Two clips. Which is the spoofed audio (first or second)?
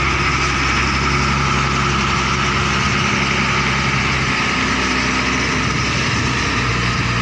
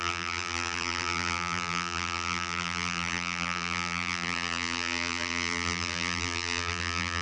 second